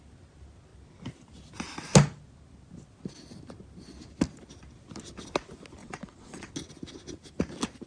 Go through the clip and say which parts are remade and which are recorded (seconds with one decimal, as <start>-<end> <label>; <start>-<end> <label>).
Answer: 0.0-5.8 recorded; 5.8-6.5 remade; 6.5-7.9 recorded